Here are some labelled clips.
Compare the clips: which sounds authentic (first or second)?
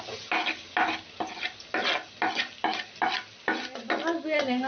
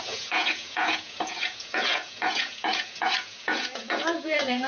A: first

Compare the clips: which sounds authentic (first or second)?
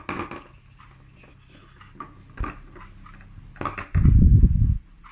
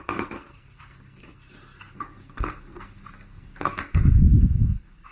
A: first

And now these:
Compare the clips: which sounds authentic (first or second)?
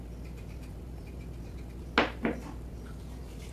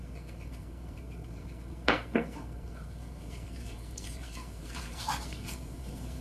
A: first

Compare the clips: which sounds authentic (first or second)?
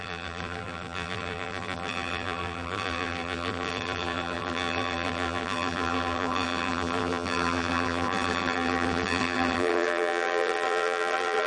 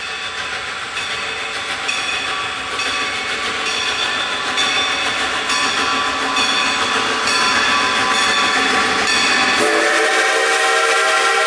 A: second